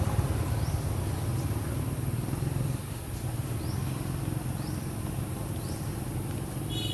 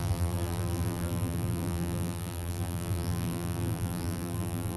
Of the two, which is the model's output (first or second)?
second